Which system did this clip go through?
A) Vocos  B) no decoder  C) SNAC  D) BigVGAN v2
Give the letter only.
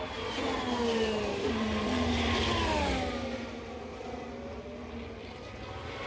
B